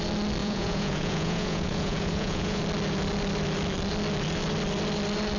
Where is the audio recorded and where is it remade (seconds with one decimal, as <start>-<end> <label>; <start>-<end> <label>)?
0.0-0.4 recorded; 0.4-2.6 remade; 2.6-5.4 recorded